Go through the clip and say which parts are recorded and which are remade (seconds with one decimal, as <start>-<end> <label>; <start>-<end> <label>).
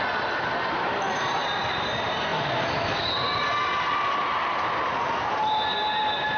0.0-6.4 recorded